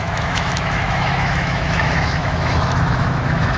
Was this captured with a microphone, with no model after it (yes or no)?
no